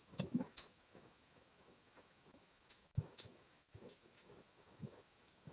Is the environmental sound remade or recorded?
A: remade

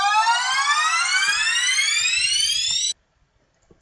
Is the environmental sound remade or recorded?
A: recorded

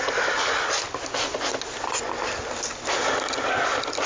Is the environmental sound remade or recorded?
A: recorded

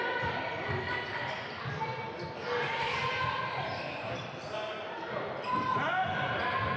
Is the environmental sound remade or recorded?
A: recorded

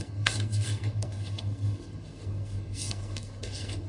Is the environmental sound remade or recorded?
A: remade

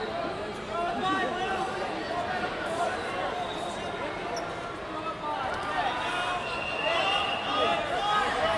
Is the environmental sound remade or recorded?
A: recorded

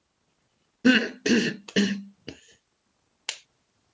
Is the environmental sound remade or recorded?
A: recorded